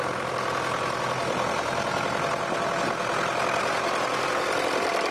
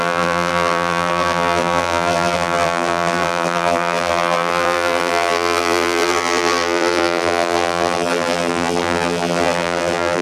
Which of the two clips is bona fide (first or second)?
first